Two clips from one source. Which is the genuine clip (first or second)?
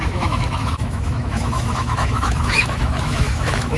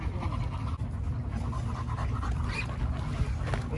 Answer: second